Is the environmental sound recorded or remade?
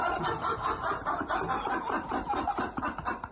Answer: remade